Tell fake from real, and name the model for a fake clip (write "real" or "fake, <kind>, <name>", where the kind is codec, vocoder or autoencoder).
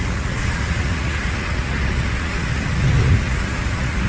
fake, vocoder, Vocos